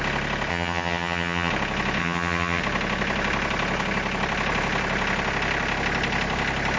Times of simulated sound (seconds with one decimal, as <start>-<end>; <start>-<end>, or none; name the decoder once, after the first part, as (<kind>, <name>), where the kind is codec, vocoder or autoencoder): 0.5-1.5 (vocoder, HiFi-GAN); 2.0-2.6